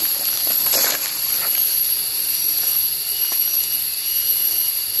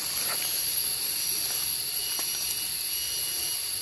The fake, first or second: first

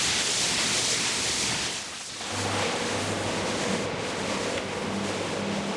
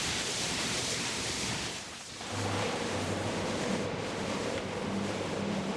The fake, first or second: second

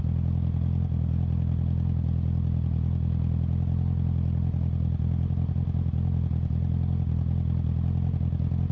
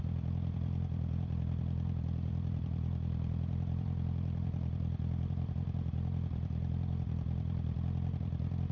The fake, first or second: second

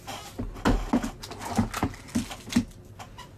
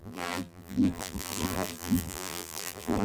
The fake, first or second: second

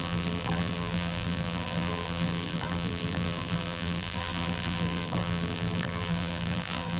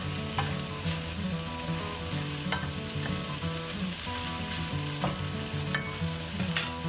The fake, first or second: first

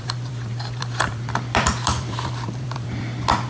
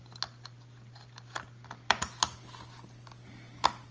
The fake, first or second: first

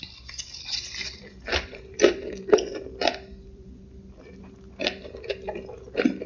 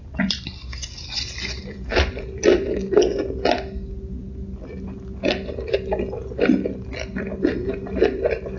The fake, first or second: first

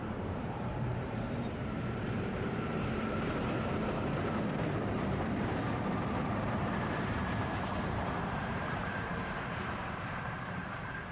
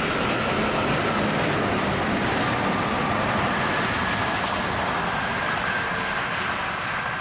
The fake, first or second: first